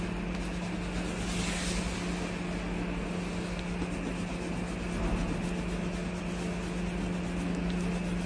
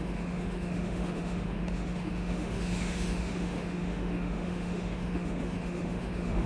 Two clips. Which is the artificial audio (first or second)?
second